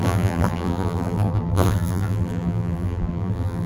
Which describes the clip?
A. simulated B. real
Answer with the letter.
A